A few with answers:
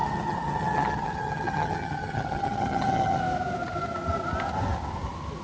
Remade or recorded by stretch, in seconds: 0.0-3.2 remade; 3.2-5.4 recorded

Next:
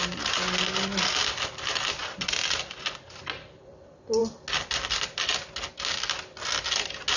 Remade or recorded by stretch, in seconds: 0.0-7.2 recorded

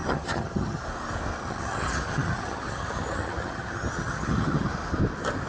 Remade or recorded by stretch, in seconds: 0.0-0.8 remade; 0.8-1.4 recorded; 1.4-4.7 remade; 4.7-5.5 recorded

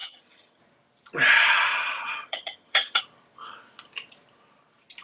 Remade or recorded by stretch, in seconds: 0.0-0.6 remade; 0.6-1.7 recorded; 1.7-3.0 remade; 3.0-5.0 recorded